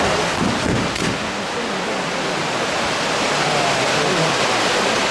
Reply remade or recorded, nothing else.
recorded